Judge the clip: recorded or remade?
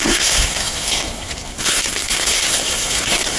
remade